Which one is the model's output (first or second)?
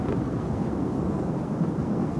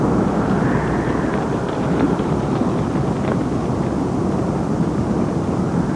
first